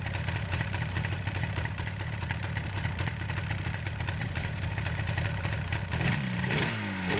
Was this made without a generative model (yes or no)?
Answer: no